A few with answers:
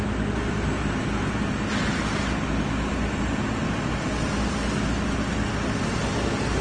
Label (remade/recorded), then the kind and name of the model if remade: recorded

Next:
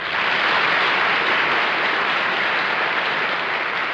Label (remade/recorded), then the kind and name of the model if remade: recorded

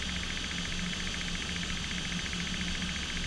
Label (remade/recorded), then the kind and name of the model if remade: recorded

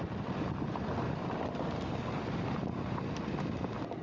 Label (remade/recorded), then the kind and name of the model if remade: recorded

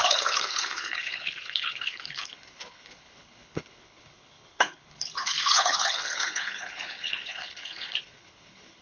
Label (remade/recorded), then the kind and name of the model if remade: remade, codec, HILCodec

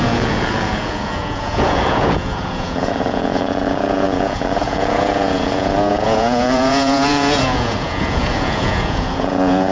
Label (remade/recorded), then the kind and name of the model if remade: remade, vocoder, Vocos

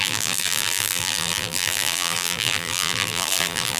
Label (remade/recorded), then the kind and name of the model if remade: remade, vocoder, BigVGAN v2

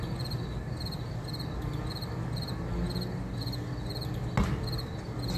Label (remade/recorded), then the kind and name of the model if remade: recorded